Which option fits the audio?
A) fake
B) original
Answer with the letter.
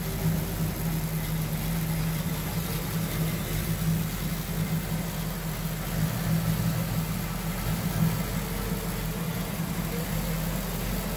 B